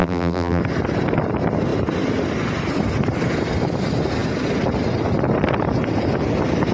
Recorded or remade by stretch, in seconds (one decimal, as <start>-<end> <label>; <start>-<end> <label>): 0.0-0.6 remade; 0.6-6.7 recorded